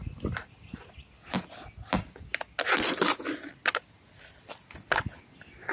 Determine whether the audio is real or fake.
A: real